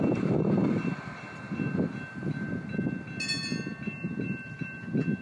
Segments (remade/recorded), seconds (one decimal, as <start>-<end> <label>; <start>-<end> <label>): 0.0-5.2 recorded